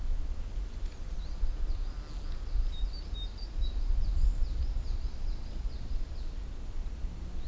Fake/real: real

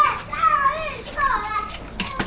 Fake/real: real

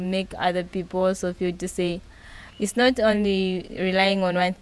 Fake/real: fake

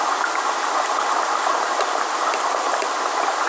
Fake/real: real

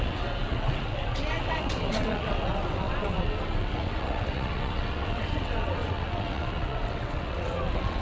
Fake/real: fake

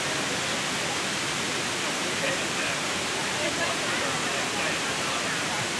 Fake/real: real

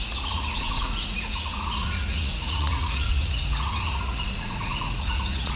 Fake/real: fake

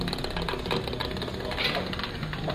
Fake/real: real